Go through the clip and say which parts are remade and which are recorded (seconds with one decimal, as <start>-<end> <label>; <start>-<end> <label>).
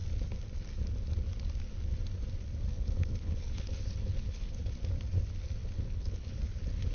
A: 0.0-2.7 recorded; 2.7-4.7 remade; 4.7-5.6 recorded; 5.6-6.4 remade; 6.4-6.9 recorded